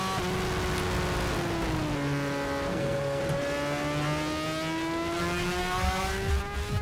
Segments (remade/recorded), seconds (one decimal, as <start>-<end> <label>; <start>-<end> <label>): 0.0-2.7 recorded; 2.7-3.2 remade; 3.2-5.6 recorded; 5.6-6.3 remade; 6.3-6.8 recorded

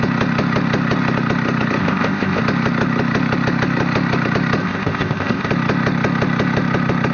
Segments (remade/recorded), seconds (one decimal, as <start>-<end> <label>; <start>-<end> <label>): 0.0-1.8 recorded; 1.8-2.4 remade; 2.4-4.6 recorded; 4.6-5.5 remade; 5.5-7.1 recorded

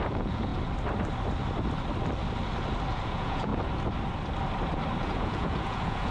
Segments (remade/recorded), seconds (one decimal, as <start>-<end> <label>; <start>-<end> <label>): 0.0-0.5 remade; 0.5-2.9 recorded; 2.9-3.5 remade; 3.5-5.0 recorded; 5.0-6.1 remade

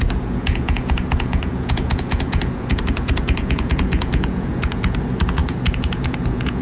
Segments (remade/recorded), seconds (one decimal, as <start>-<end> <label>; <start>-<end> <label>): 0.0-6.6 remade

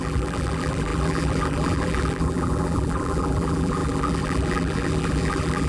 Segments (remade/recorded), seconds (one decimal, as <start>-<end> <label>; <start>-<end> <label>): 0.0-5.7 remade